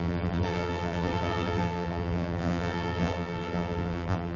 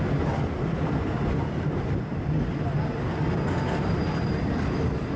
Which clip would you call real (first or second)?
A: second